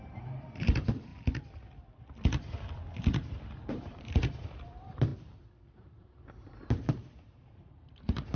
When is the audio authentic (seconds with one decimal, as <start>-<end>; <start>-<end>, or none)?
1.1-3.7; 5.1-5.8